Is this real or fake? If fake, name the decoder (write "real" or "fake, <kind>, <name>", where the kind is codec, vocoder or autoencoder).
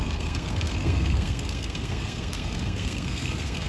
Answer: fake, codec, SNAC